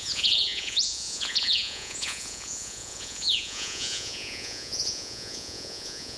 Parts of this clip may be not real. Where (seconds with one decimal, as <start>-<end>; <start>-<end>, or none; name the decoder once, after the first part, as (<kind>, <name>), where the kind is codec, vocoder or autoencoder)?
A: 0.0-6.2 (vocoder, Vocos)